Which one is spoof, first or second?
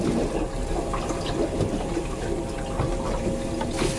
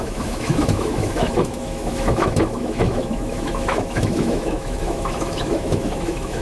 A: second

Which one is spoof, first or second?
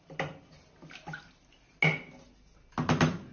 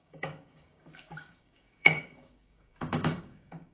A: second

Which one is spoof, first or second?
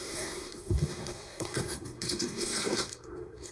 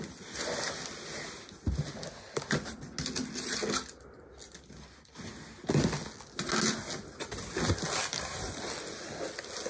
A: first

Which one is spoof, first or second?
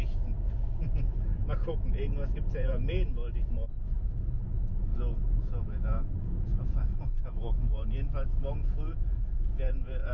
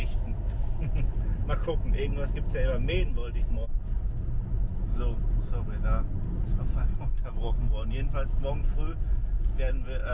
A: first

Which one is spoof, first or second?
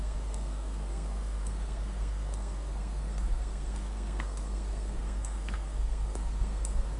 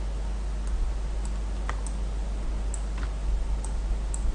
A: first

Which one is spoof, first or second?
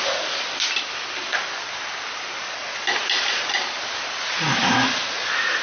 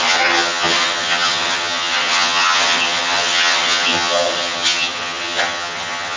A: second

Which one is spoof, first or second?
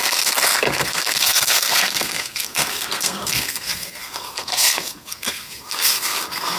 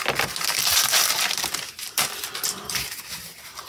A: first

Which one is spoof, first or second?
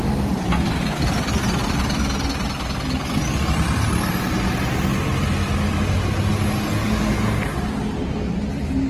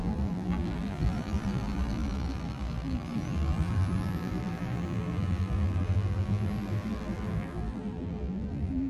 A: second